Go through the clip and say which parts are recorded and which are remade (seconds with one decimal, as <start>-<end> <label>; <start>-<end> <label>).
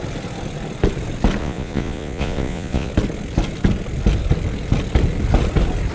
0.0-1.4 recorded; 1.4-2.9 remade; 2.9-5.9 recorded